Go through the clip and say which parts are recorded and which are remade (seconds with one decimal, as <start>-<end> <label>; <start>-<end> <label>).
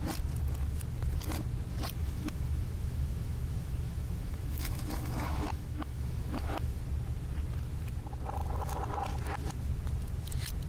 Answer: 0.0-2.0 recorded; 2.0-6.8 remade; 6.8-10.7 recorded